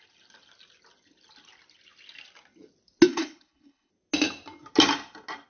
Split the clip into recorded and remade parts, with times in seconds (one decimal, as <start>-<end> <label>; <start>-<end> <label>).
0.0-3.1 recorded; 3.1-3.9 remade; 3.9-5.5 recorded